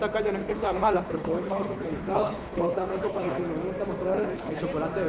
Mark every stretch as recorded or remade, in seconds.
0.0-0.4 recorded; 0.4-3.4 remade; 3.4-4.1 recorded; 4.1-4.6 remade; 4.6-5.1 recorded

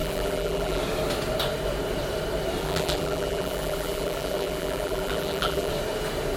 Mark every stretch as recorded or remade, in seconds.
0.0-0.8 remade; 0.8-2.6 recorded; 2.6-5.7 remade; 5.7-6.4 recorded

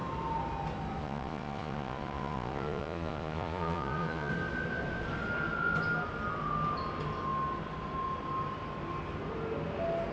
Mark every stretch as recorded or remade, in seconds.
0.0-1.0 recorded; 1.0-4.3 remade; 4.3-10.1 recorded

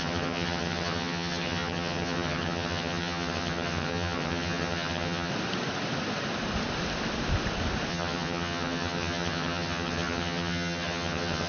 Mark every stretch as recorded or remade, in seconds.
0.0-5.3 remade; 5.3-7.9 recorded; 7.9-11.5 remade